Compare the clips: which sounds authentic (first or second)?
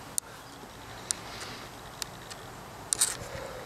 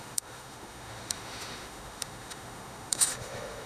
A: first